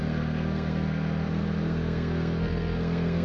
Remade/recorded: remade